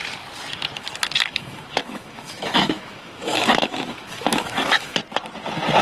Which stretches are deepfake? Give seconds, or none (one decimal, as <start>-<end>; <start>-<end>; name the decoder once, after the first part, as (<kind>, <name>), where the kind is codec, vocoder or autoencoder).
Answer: 1.3-5.0 (autoencoder, DAC-VAE)